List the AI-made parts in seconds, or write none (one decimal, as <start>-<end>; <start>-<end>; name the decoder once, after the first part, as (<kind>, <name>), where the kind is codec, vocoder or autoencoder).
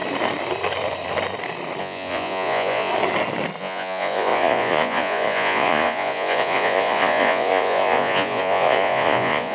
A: 1.8-2.9 (vocoder, Vocos); 3.6-9.5